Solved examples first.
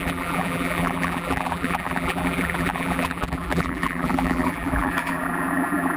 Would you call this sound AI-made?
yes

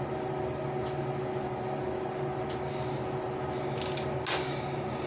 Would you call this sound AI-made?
no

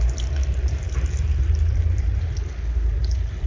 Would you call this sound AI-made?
yes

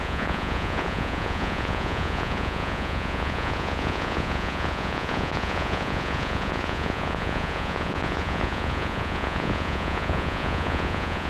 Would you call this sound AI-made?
yes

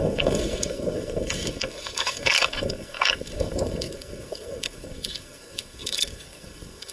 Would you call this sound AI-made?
yes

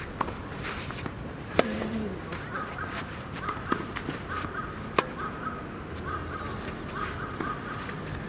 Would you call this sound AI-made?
yes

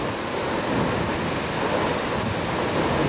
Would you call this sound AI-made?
no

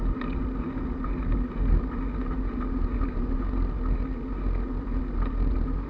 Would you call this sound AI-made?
no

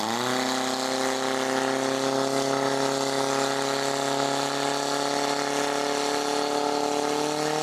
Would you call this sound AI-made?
no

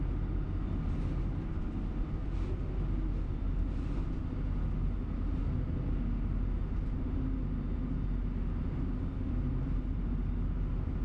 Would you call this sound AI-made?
no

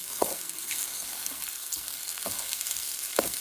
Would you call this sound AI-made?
yes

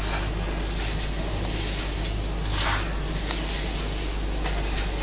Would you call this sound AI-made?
no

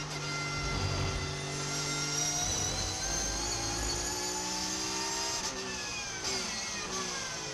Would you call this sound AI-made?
no